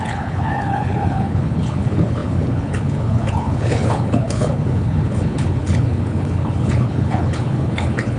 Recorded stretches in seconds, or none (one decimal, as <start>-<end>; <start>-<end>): none